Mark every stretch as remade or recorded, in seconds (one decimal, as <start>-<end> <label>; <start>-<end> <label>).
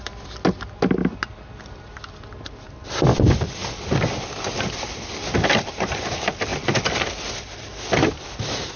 0.0-8.8 recorded